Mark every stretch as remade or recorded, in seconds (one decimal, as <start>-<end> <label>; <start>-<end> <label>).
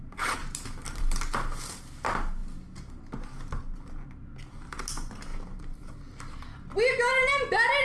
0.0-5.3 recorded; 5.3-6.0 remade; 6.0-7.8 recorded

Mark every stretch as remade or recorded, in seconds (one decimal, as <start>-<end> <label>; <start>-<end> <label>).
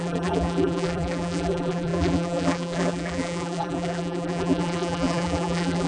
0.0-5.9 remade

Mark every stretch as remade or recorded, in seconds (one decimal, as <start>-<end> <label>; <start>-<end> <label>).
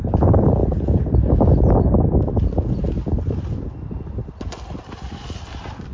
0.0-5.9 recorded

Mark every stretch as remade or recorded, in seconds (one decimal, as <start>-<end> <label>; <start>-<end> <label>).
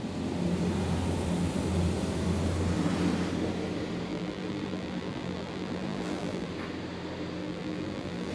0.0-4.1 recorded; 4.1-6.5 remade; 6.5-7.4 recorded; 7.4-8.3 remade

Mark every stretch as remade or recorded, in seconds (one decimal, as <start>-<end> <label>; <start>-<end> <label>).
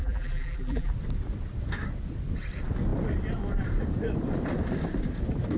0.0-0.9 remade; 0.9-5.6 recorded